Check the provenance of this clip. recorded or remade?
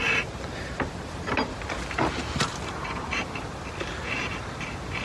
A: recorded